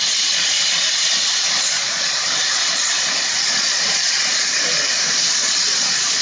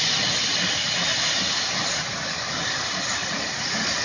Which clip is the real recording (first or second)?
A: second